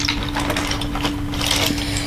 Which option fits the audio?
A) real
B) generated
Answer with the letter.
A